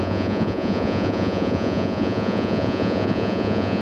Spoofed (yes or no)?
yes